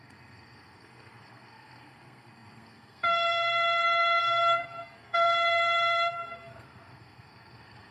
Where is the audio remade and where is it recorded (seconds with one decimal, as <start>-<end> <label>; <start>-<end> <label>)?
0.0-7.9 remade